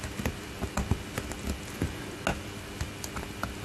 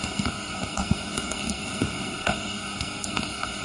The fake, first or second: second